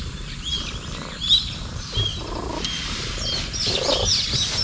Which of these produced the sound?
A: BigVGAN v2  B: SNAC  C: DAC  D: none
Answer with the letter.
D